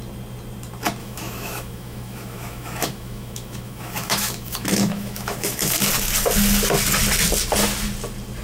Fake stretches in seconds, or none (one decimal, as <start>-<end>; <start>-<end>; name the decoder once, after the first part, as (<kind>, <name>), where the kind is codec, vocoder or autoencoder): 1.0-5.9 (autoencoder, DAC-VAE)